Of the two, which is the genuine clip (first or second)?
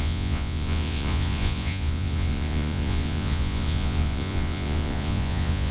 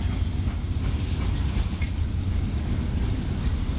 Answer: second